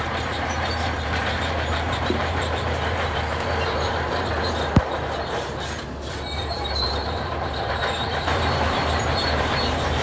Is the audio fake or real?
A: fake